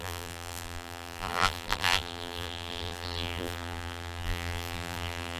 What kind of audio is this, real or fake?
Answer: fake